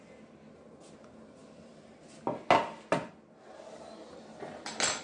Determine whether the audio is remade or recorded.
recorded